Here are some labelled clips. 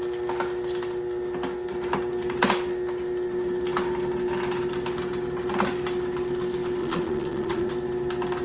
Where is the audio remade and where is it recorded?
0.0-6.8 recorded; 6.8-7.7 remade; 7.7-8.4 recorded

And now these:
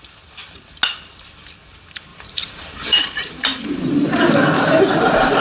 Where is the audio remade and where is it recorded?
0.0-2.1 recorded; 2.1-3.6 remade; 3.6-5.4 recorded

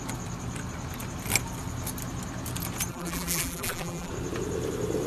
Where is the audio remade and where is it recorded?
0.0-2.9 recorded; 2.9-4.1 remade; 4.1-5.1 recorded

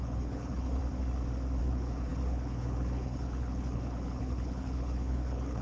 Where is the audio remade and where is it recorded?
0.0-0.8 remade; 0.8-1.6 recorded; 1.6-5.6 remade

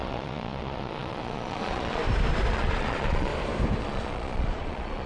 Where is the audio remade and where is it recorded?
0.0-2.0 remade; 2.0-2.5 recorded; 2.5-3.3 remade; 3.3-3.8 recorded; 3.8-5.1 remade

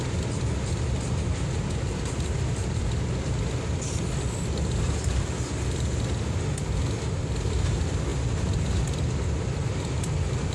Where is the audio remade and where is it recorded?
0.0-10.5 recorded

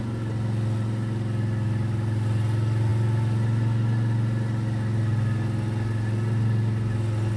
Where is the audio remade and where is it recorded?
0.0-7.4 recorded

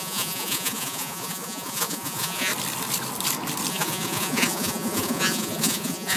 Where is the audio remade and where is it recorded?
0.0-2.5 remade; 2.5-3.7 recorded; 3.7-6.2 remade